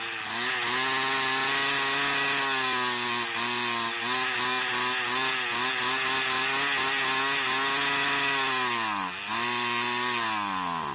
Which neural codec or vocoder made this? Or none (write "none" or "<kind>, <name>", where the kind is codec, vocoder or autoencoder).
none